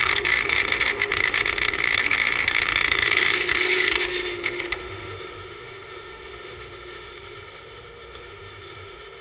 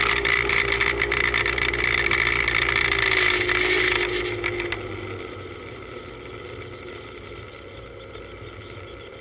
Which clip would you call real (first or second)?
second